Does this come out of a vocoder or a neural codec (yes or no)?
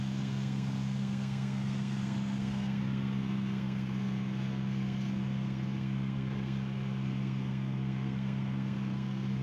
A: yes